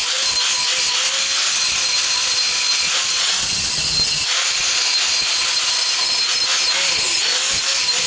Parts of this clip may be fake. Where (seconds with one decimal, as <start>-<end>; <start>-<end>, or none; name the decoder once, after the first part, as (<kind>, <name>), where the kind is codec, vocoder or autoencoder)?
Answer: 3.1-3.8 (vocoder, WaveNeXt)